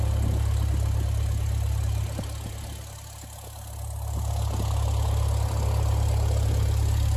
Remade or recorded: recorded